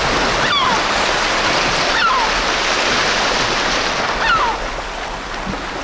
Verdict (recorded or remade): recorded